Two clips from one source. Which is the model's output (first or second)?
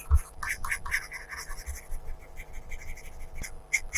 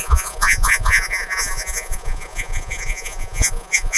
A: second